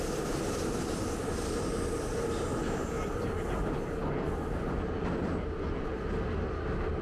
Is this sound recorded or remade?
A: recorded